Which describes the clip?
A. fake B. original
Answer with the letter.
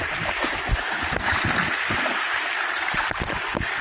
B